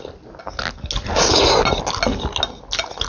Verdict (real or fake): real